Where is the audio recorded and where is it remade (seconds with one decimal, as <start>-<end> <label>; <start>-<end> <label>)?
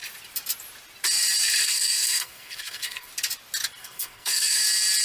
0.0-1.6 recorded; 1.6-3.1 remade; 3.1-3.8 recorded; 3.8-4.6 remade; 4.6-5.0 recorded